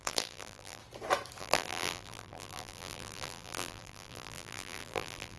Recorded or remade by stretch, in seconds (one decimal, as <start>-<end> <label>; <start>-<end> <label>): 0.0-0.8 remade; 0.8-1.4 recorded; 1.4-5.4 remade